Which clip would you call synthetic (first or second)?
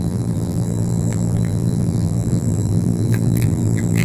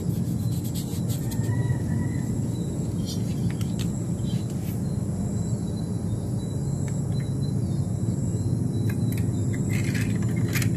first